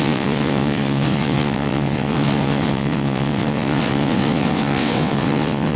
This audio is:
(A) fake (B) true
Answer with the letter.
A